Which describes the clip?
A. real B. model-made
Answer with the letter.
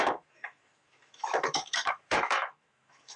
B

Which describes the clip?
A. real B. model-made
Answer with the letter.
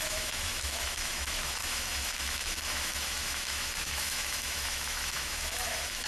B